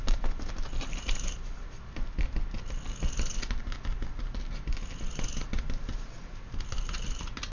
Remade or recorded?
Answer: recorded